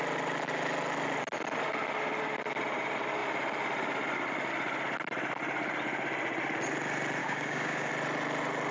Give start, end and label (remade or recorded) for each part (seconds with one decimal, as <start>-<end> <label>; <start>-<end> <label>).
0.0-7.2 recorded; 7.2-7.9 remade; 7.9-8.7 recorded